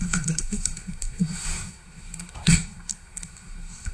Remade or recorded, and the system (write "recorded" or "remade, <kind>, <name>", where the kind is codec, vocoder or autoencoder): remade, codec, SNAC